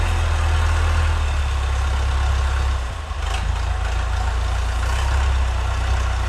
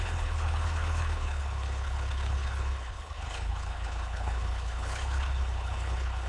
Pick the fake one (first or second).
second